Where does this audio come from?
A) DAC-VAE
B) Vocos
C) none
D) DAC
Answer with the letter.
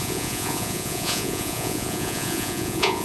B